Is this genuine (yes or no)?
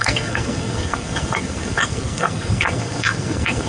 no